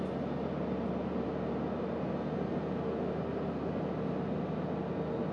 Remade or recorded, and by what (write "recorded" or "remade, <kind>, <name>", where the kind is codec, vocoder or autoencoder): recorded